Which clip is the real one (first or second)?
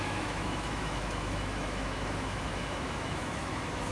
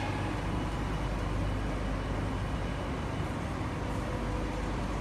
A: second